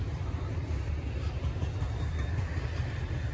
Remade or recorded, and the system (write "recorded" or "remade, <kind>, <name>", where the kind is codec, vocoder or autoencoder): recorded